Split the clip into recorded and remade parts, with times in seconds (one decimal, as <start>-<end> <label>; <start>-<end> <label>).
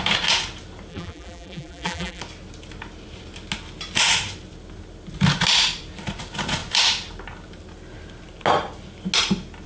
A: 0.0-0.9 recorded; 0.9-2.2 remade; 2.2-9.7 recorded